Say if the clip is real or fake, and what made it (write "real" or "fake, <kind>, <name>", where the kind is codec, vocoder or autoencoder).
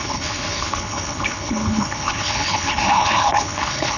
fake, codec, HILCodec